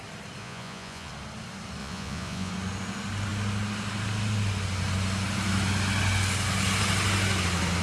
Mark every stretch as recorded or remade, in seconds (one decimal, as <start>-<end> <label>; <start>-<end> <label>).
0.0-0.4 recorded; 0.4-1.1 remade; 1.1-1.8 recorded; 1.8-2.5 remade; 2.5-7.8 recorded